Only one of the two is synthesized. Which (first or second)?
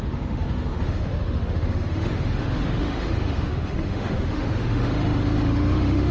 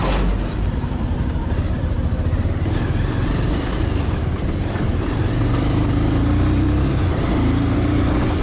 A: first